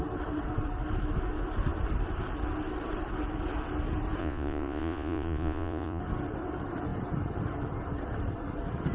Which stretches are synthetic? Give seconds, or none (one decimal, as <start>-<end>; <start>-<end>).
4.2-6.0